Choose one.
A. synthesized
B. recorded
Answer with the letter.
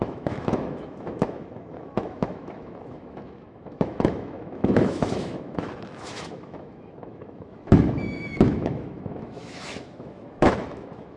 A